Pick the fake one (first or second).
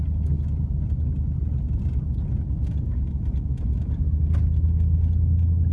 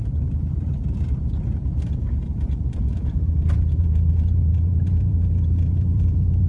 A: second